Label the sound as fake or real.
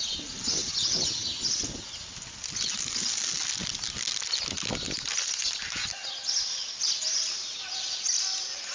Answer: real